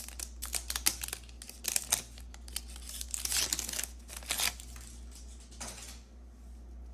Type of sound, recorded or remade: recorded